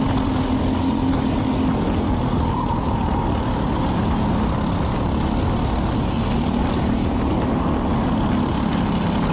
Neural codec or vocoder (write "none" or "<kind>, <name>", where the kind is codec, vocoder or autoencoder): none